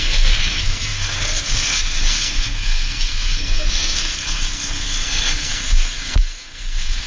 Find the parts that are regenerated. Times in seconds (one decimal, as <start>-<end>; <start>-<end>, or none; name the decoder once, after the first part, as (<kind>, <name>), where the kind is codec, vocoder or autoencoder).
0.0-7.1 (codec, SNAC)